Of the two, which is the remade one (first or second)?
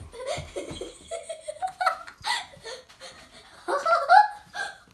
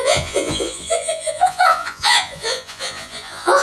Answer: second